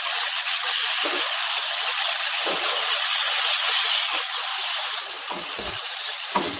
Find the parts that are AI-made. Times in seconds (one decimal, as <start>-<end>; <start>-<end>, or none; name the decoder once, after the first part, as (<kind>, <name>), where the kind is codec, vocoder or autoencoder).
0.0-0.8 (vocoder, Vocos); 1.6-4.5; 5.3-6.6